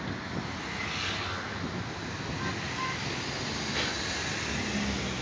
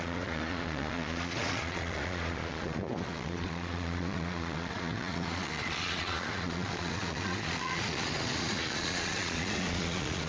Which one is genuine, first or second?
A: first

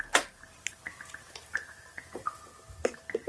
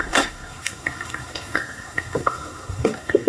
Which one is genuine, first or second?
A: first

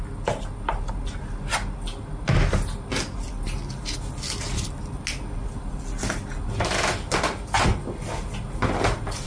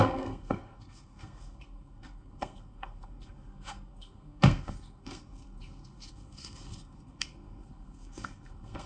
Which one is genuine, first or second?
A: first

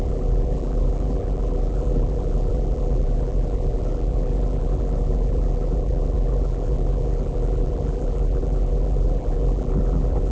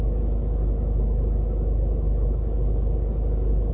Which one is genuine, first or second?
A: second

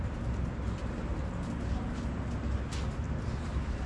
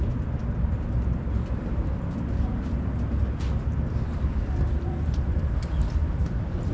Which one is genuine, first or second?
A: first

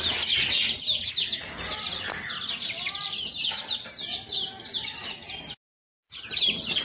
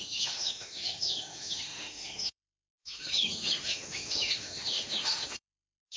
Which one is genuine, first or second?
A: first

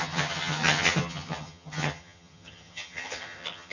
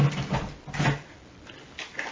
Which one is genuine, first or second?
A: second